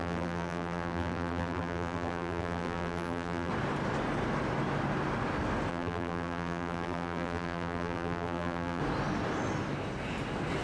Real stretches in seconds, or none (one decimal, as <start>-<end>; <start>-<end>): 3.5-5.7; 8.8-10.6